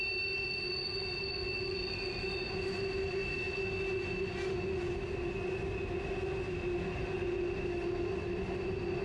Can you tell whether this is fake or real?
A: real